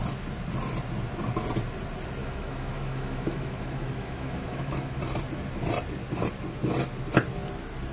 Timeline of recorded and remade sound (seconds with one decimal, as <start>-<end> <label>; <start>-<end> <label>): 0.0-2.2 recorded; 2.2-5.0 remade; 5.0-7.9 recorded